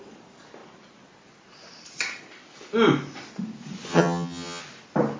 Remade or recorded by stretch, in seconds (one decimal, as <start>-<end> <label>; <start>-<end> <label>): 0.0-3.9 recorded; 3.9-4.6 remade; 4.6-5.2 recorded